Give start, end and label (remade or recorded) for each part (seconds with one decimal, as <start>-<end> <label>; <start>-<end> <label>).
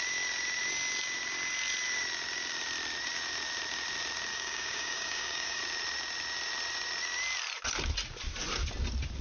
0.0-4.3 recorded; 4.3-5.6 remade; 5.6-9.2 recorded